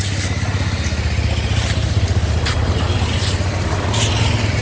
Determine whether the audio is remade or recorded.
recorded